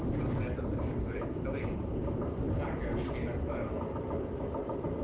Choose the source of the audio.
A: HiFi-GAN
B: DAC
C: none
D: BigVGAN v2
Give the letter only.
C